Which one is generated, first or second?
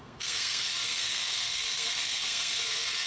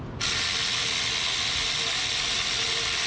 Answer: first